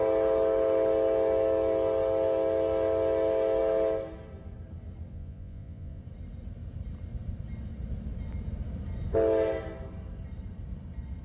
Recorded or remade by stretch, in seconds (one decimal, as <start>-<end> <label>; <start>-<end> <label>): 0.0-5.1 recorded; 5.1-6.0 remade; 6.0-11.2 recorded